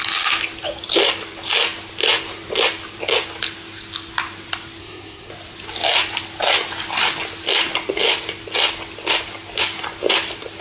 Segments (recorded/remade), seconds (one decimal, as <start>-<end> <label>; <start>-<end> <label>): 0.0-4.8 recorded; 4.8-5.3 remade; 5.3-10.6 recorded

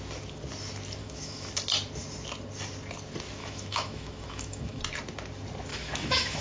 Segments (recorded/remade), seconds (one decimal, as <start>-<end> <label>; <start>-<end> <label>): 0.0-1.0 recorded; 1.0-1.5 remade; 1.5-3.4 recorded; 3.4-4.8 remade; 4.8-5.7 recorded; 5.7-6.4 remade

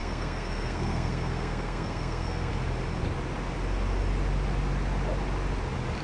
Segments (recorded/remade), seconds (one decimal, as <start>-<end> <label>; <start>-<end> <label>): 0.0-2.5 remade; 2.5-6.0 recorded

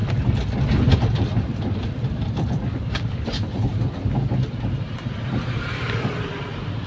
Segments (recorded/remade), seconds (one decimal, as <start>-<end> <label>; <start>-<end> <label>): 0.0-1.9 recorded; 1.9-3.7 remade; 3.7-5.5 recorded; 5.5-6.9 remade

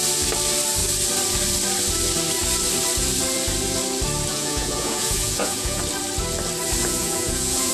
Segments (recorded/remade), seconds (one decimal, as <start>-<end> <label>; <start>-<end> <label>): 0.0-4.3 recorded; 4.3-5.8 remade; 5.8-6.8 recorded; 6.8-7.7 remade

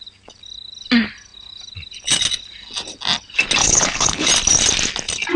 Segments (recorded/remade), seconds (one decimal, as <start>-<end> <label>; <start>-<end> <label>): 0.0-3.6 recorded; 3.6-4.3 remade; 4.3-5.4 recorded

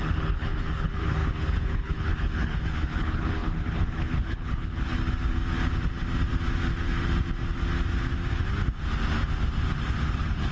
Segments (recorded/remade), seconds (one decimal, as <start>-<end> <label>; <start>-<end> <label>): 0.0-5.0 remade; 5.0-10.1 recorded; 10.1-10.5 remade

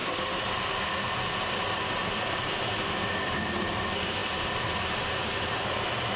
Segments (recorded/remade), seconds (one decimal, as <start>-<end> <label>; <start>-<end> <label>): 0.0-6.2 recorded